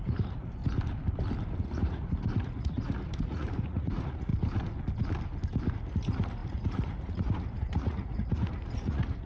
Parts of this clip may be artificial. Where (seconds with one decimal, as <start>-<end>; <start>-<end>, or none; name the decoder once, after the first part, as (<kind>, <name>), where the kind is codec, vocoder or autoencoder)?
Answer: 0.0-0.6 (vocoder, Vocos); 1.6-4.3; 5.7-9.3